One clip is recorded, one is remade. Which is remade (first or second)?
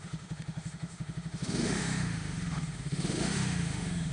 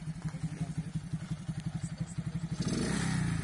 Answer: first